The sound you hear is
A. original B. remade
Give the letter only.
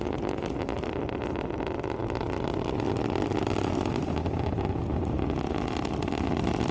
A